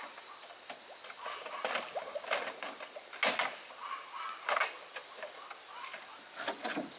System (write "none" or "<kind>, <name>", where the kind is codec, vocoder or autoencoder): none